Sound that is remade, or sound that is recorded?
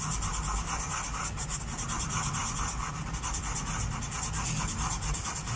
recorded